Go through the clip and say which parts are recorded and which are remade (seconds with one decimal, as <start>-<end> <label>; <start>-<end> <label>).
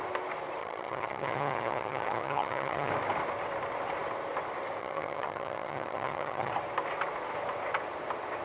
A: 0.0-0.6 recorded; 0.6-2.9 remade; 2.9-4.8 recorded; 4.8-6.5 remade; 6.5-8.4 recorded